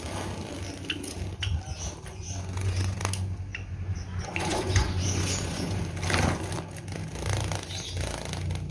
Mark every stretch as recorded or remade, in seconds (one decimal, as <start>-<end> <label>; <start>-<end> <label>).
0.0-2.1 recorded; 2.1-3.0 remade; 3.0-3.5 recorded; 3.5-5.8 remade; 5.8-8.7 recorded